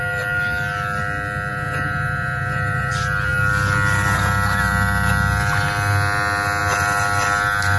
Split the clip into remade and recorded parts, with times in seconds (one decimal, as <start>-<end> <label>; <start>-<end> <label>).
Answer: 0.0-1.5 recorded; 1.5-2.9 remade; 2.9-7.8 recorded